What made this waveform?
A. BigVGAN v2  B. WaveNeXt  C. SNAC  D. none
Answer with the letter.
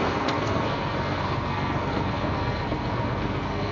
C